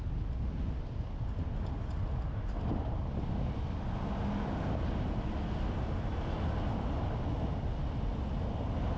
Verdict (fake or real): real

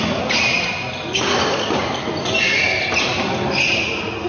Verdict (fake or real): real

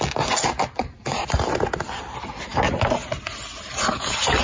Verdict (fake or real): real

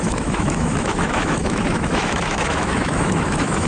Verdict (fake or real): fake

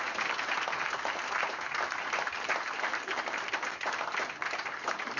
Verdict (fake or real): real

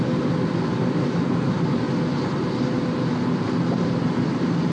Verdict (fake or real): real